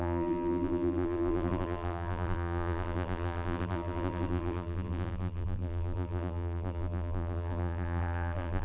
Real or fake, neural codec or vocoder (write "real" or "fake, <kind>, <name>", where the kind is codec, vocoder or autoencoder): fake, vocoder, BigVGAN v2